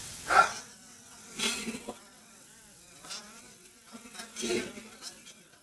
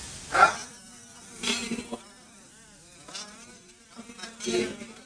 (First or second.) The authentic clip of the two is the second